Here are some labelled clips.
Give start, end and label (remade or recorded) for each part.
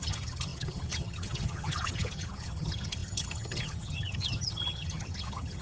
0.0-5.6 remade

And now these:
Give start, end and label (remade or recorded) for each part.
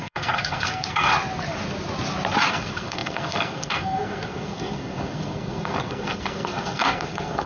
0.0-1.1 remade; 1.1-2.5 recorded; 2.5-7.5 remade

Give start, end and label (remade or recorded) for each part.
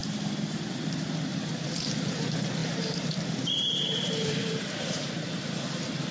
0.0-0.6 remade; 0.6-2.6 recorded; 2.6-5.1 remade; 5.1-6.1 recorded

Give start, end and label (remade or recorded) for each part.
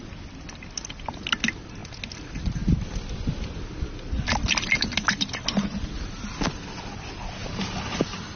0.0-8.4 recorded